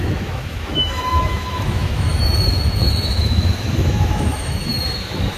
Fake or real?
fake